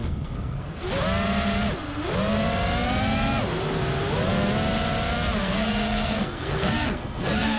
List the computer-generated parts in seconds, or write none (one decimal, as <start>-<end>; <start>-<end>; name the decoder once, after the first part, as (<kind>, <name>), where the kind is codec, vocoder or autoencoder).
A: 0.0-0.9 (codec, SNAC); 5.4-7.6